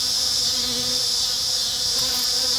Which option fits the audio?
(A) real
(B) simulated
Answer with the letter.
A